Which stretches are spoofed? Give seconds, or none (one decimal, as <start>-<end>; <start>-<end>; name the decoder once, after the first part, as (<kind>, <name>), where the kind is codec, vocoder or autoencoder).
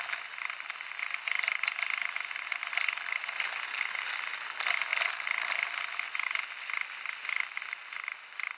none